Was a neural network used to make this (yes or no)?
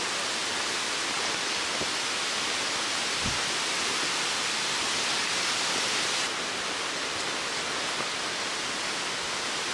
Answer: no